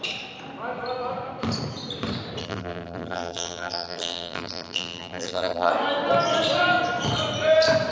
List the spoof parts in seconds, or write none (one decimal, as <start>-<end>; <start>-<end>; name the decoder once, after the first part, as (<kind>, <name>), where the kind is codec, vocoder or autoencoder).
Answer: 2.4-5.7 (vocoder, BigVGAN v2)